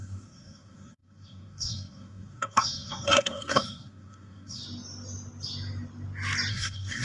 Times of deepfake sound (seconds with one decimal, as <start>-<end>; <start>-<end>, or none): 0.0-4.6; 6.5-7.0

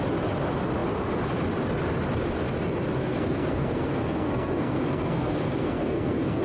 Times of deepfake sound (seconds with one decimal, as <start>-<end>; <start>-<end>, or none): 3.0-6.4

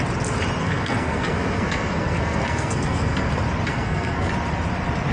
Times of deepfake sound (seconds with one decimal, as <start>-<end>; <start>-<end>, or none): 0.6-3.3; 3.7-4.3

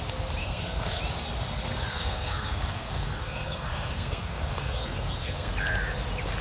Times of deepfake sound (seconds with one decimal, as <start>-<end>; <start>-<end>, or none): 0.4-1.0; 1.9-5.5

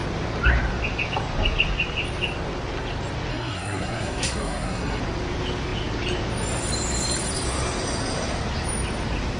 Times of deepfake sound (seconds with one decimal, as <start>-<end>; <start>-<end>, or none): 3.3-5.0